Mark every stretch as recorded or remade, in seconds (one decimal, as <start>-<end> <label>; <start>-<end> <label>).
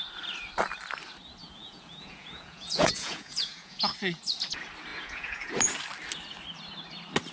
0.0-1.4 recorded; 1.4-3.8 remade; 3.8-4.9 recorded; 4.9-5.5 remade; 5.5-7.3 recorded